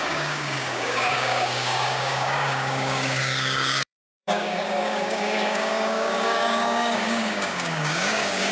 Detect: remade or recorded remade